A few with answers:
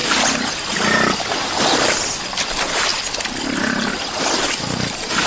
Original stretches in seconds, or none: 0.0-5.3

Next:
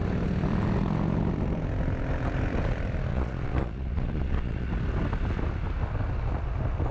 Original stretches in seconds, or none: 0.0-3.1; 4.7-6.9

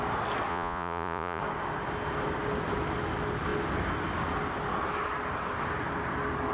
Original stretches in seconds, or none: 0.0-0.5; 1.4-6.5